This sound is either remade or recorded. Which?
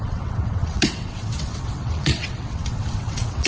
remade